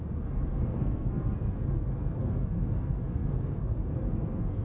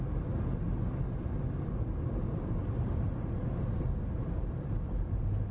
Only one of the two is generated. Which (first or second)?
first